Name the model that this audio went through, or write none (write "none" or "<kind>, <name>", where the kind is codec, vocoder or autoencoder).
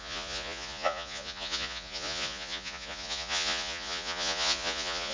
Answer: vocoder, Vocos